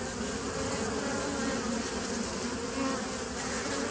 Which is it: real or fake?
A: real